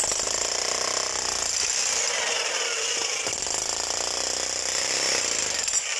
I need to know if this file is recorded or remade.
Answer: remade